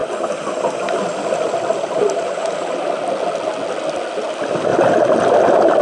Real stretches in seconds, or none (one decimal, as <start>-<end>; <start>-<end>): 3.1-5.8